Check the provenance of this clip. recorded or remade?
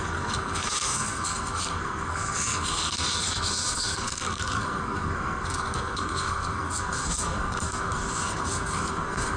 remade